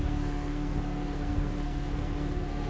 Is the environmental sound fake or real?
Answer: fake